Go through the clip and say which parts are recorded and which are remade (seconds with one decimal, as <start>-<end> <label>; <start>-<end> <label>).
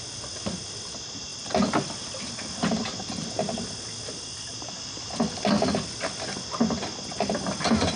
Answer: 0.0-8.0 recorded